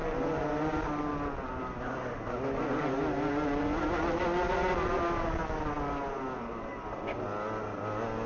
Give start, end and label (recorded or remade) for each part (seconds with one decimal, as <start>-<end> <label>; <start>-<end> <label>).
0.0-8.3 recorded